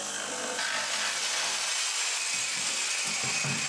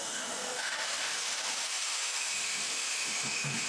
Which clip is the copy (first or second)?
second